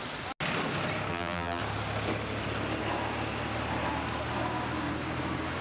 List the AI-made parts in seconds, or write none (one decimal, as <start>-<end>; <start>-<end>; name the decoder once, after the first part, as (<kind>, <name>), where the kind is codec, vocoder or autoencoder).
1.1-1.6 (vocoder, BigVGAN v2)